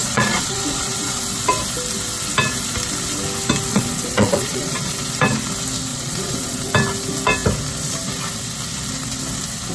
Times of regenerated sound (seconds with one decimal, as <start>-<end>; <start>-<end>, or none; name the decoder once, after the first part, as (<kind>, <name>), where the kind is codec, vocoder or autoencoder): 0.0-1.2 (vocoder, Vocos); 3.7-5.1; 5.9-6.7